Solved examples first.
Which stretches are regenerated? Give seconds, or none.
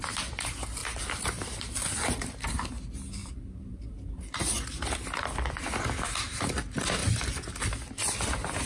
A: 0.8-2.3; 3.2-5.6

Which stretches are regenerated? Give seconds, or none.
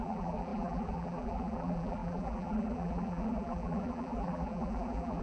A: 0.0-5.2